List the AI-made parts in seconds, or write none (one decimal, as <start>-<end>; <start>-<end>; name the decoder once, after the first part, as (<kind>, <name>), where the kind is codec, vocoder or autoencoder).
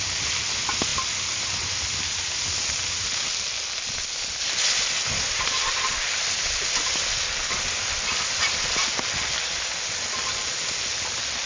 none